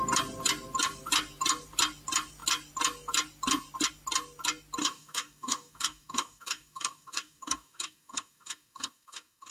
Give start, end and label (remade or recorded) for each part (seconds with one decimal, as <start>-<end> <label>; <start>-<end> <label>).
0.0-4.8 recorded; 4.8-9.5 remade